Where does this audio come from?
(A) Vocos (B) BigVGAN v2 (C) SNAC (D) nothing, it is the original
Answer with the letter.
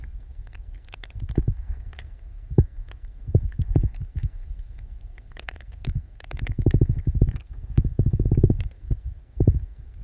C